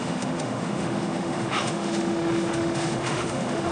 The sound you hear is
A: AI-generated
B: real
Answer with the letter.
A